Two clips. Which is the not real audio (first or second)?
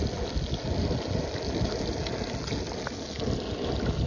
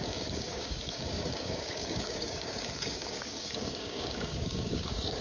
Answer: second